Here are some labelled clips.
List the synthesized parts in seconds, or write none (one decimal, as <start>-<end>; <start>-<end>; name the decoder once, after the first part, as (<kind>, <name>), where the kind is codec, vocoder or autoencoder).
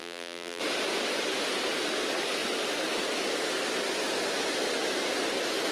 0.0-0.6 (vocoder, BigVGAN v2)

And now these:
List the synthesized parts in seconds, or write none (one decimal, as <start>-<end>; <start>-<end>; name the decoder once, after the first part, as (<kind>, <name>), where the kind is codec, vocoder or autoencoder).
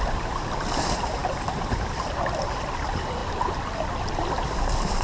0.0-3.2 (vocoder, BigVGAN v2); 4.0-5.0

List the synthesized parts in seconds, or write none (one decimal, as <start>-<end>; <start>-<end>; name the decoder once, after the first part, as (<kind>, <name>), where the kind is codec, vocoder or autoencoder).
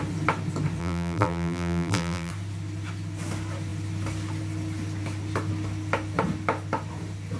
0.8-2.3 (vocoder, BigVGAN v2)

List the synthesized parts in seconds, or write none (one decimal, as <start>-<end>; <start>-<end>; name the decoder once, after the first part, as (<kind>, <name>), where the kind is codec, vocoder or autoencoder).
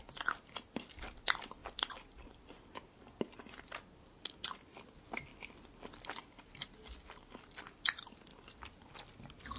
1.6-2.6 (vocoder, BigVGAN v2); 5.3-6.4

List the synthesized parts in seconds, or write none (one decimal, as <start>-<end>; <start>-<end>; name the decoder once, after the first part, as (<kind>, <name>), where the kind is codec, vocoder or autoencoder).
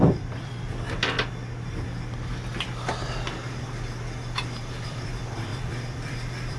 0.0-0.7 (vocoder, BigVGAN v2); 4.7-6.6